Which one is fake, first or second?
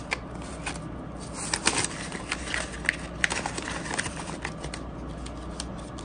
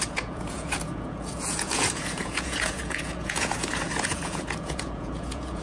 second